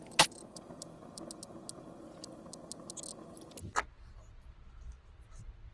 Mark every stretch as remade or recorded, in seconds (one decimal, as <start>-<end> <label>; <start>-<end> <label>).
0.0-5.7 recorded